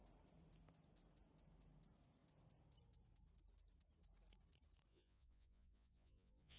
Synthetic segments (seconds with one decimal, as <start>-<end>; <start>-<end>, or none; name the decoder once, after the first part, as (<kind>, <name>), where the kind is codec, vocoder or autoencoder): 4.9-6.6 (vocoder, Vocos)